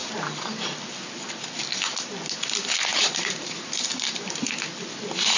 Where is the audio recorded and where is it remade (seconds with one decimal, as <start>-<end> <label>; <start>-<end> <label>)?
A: 0.0-2.9 recorded; 2.9-4.4 remade; 4.4-5.4 recorded